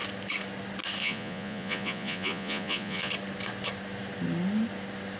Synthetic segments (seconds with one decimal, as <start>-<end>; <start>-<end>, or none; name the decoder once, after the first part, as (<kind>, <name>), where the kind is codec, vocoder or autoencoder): 1.0-3.1 (vocoder, Vocos)